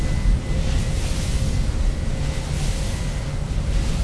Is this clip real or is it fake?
real